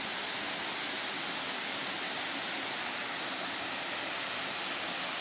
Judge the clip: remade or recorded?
recorded